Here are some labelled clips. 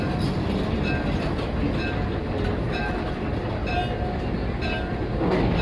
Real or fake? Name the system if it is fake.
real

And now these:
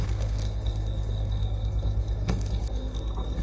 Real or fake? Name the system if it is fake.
fake, codec, SNAC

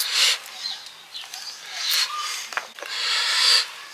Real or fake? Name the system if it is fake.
real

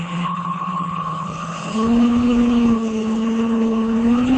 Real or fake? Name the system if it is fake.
fake, codec, HILCodec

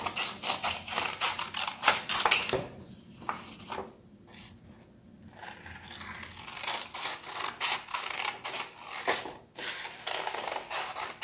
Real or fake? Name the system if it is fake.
real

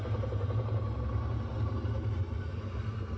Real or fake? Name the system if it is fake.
real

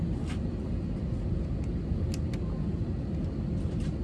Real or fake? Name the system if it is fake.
real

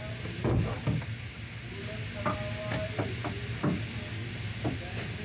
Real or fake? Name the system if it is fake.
real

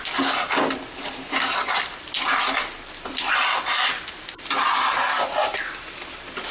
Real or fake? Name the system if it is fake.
real